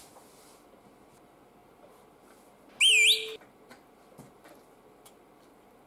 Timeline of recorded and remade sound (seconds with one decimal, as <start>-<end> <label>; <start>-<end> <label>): 0.0-5.9 recorded